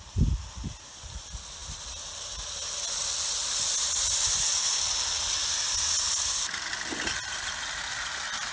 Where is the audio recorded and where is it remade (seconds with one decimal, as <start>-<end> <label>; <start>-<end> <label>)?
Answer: 0.0-8.5 recorded